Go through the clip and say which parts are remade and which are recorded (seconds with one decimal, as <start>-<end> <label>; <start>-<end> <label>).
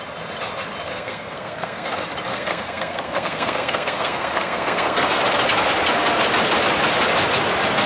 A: 0.0-0.9 recorded; 0.9-1.9 remade; 1.9-2.3 recorded; 2.3-5.2 remade; 5.2-7.9 recorded